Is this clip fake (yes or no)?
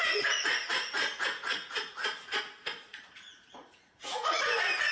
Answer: yes